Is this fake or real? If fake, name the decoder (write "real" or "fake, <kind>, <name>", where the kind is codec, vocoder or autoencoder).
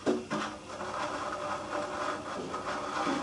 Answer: real